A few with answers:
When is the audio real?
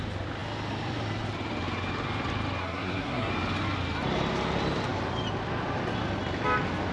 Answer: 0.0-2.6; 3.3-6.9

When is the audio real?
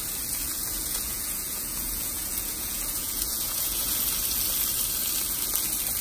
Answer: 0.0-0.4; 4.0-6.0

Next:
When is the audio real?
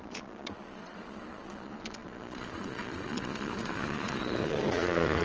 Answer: none